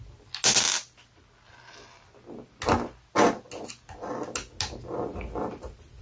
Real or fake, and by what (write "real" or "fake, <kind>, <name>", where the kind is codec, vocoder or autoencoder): real